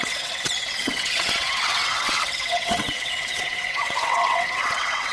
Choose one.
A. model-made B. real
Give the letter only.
A